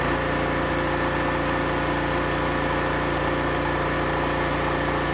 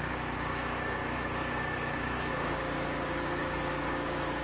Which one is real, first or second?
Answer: first